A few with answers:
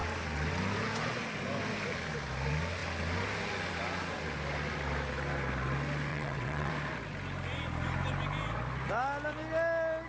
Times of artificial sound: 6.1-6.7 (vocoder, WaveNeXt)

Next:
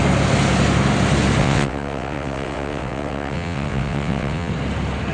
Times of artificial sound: 1.4-4.5 (vocoder, WaveNeXt)